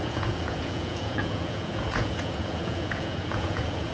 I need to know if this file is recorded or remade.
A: remade